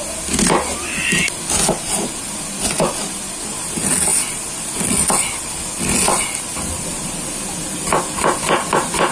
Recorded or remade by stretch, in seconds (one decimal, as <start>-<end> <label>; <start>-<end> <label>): 0.0-9.1 recorded